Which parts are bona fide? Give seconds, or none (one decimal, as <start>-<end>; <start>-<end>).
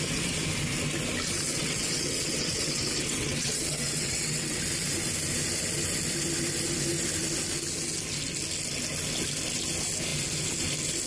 0.0-1.5; 4.6-11.1